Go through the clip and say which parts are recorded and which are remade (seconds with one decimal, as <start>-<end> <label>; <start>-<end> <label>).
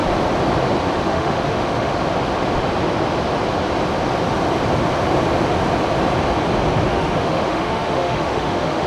0.0-1.0 recorded; 1.0-1.9 remade; 1.9-6.9 recorded; 6.9-8.9 remade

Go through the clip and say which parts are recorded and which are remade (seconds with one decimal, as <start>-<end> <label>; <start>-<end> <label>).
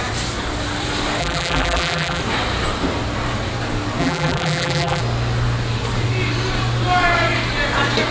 0.0-1.2 recorded; 1.2-2.2 remade; 2.2-4.0 recorded; 4.0-5.0 remade; 5.0-8.1 recorded